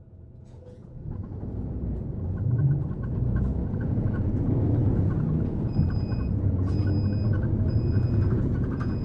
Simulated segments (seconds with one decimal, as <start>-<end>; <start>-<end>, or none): 0.0-6.8; 7.7-9.0